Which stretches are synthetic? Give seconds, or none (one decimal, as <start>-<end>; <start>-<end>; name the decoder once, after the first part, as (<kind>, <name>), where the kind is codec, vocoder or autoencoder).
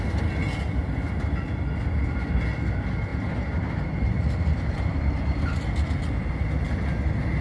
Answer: 3.1-5.4 (vocoder, BigVGAN v2)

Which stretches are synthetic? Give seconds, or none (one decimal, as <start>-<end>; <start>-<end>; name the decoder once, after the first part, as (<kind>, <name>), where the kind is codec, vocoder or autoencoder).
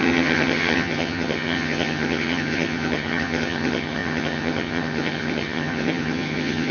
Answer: 0.0-6.7 (vocoder, HiFi-GAN)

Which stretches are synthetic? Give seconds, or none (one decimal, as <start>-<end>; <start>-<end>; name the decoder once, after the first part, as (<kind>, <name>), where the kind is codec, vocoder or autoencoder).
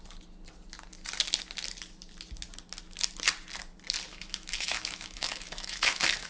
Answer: 4.1-6.3 (autoencoder, DAC-VAE)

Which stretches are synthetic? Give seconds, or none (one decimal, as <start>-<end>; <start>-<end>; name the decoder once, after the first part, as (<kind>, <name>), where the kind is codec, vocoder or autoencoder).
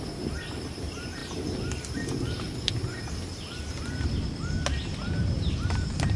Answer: 0.0-1.2 (vocoder, BigVGAN v2); 4.9-6.2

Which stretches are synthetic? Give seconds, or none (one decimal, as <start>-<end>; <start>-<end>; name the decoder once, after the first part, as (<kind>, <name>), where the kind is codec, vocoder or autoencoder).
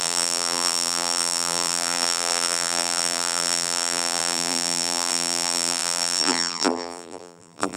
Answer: 0.0-7.8 (vocoder, BigVGAN v2)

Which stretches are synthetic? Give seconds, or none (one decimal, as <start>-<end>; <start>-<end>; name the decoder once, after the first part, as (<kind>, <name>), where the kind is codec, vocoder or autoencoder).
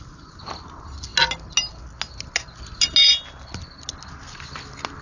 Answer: none